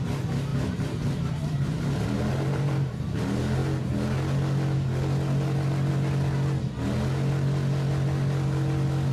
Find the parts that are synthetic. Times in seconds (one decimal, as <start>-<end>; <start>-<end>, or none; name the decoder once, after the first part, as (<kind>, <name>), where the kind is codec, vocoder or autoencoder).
0.5-3.2 (vocoder, BigVGAN v2)